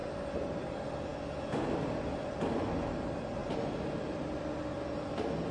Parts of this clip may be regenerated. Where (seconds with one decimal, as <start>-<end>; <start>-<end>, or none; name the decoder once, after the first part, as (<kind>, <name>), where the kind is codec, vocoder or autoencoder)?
none